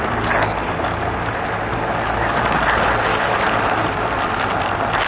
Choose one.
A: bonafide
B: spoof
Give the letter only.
A